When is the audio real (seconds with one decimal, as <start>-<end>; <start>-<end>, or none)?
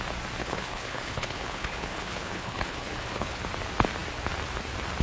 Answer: 0.0-0.4; 3.4-5.0